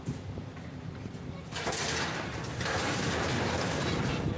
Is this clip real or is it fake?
fake